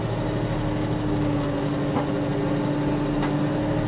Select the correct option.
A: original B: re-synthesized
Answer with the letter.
A